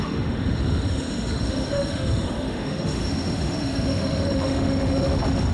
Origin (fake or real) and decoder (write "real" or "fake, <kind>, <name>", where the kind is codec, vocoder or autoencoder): fake, autoencoder, DAC-VAE